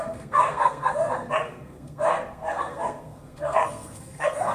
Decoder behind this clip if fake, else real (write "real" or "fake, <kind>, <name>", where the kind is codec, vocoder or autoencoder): fake, codec, SNAC